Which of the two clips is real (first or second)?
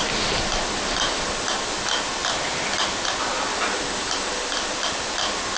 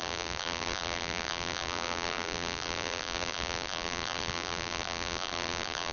first